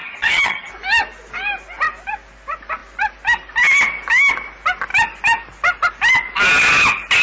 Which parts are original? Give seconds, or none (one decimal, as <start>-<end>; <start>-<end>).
0.7-7.2